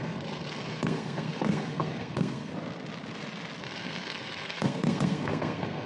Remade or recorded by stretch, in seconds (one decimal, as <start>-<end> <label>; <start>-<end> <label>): 0.0-2.5 remade; 2.5-3.6 recorded; 3.6-5.9 remade